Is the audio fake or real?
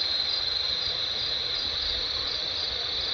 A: real